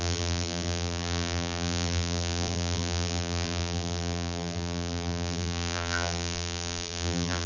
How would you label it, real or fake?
fake